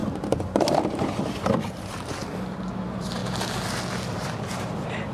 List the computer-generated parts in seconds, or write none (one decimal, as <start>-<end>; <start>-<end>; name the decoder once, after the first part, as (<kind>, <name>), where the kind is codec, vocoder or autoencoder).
0.0-2.2 (vocoder, BigVGAN v2); 2.8-3.2; 4.1-5.1